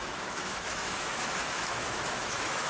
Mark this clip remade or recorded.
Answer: remade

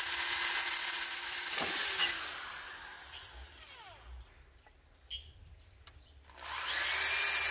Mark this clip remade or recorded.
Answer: recorded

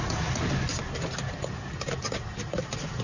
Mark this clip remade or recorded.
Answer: recorded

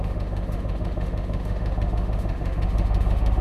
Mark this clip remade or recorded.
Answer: remade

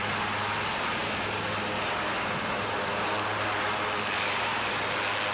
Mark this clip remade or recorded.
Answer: recorded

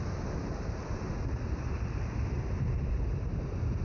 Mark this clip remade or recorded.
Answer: recorded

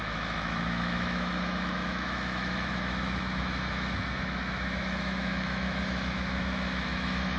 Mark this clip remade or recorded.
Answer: remade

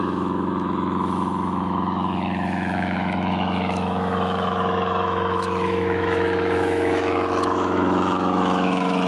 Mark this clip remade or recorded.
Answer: remade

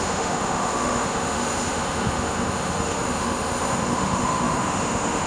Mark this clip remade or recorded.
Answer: remade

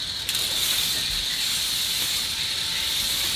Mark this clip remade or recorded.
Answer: recorded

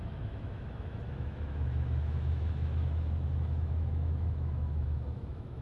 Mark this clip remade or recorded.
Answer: remade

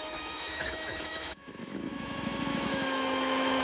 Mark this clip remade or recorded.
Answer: remade